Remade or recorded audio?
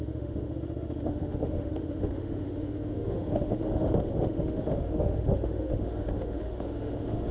remade